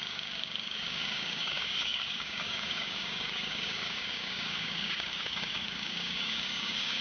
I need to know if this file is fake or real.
fake